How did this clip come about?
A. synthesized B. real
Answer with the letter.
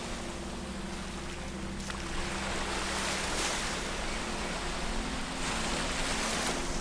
B